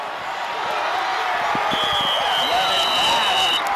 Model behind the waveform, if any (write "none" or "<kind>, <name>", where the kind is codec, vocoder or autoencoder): none